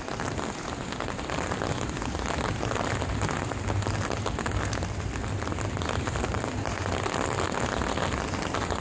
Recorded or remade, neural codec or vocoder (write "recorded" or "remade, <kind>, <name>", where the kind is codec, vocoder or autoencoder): recorded